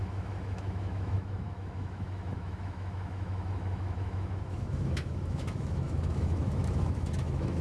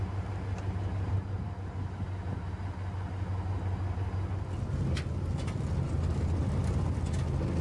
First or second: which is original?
second